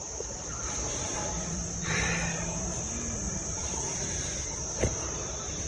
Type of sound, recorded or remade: remade